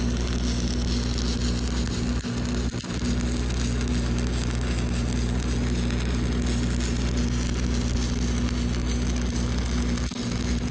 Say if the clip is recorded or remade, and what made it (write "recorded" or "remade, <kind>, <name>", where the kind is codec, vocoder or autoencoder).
recorded